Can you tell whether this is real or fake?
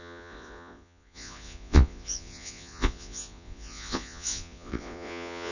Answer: fake